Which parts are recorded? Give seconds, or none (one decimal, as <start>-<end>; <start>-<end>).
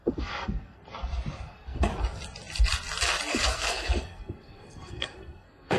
0.8-1.4; 1.9-3.3